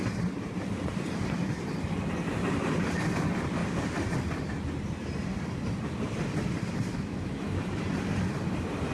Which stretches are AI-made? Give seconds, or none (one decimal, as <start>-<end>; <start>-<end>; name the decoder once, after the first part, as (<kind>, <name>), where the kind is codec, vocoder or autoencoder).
6.9-7.8 (autoencoder, DAC-VAE)